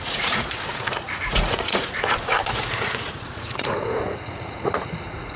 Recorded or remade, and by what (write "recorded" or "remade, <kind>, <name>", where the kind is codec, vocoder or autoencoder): remade, vocoder, Vocos